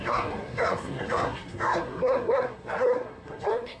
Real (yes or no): no